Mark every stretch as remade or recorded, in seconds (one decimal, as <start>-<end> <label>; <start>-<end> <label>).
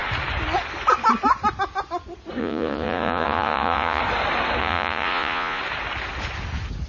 0.0-2.4 recorded; 2.4-4.0 remade; 4.0-4.6 recorded; 4.6-5.6 remade; 5.6-6.9 recorded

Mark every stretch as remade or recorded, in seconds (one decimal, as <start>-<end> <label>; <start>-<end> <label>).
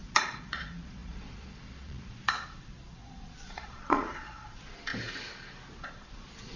0.0-4.9 remade; 4.9-5.8 recorded; 5.8-6.6 remade